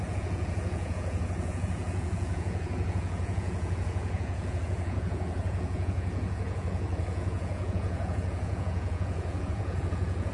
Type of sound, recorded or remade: remade